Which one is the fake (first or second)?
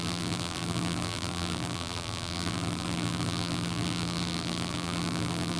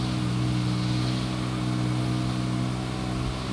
first